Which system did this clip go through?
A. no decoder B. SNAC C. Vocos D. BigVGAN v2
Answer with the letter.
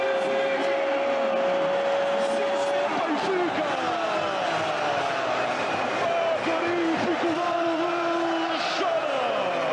A